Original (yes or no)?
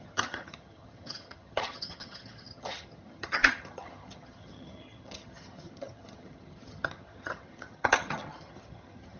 no